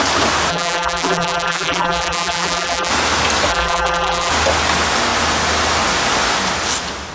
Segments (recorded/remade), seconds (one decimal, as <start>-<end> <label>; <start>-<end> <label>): 0.0-0.5 recorded; 0.5-2.9 remade; 2.9-3.5 recorded; 3.5-4.3 remade; 4.3-7.1 recorded